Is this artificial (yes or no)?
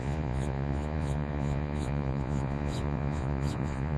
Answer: yes